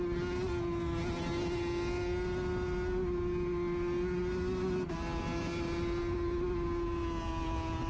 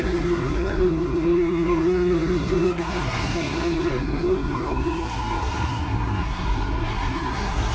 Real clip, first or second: first